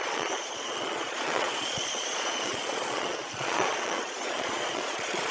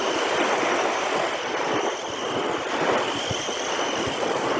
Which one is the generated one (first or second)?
first